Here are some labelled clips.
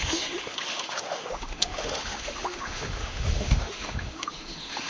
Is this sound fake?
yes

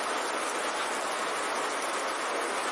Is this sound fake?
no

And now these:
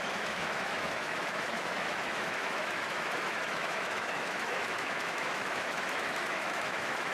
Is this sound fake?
yes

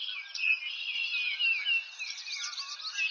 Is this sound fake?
no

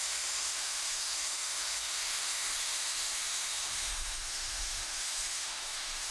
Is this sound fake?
yes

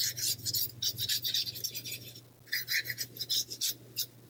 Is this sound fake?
no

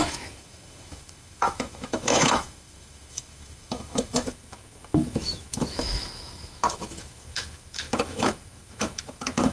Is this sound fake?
yes